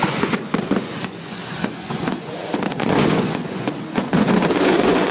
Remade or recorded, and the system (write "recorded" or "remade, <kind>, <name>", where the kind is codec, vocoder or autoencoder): remade, vocoder, Vocos